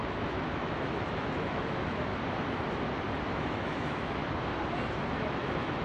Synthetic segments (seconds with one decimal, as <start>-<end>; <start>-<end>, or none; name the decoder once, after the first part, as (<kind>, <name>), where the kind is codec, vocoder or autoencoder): 0.0-2.1 (autoencoder, DAC-VAE); 3.3-4.2; 5.1-5.8